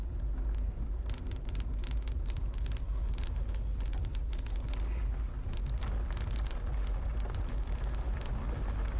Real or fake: real